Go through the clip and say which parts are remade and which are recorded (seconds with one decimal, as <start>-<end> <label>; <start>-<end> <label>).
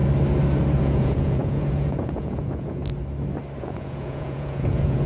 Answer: 0.0-0.8 recorded; 0.8-2.8 remade; 2.8-3.6 recorded; 3.6-5.1 remade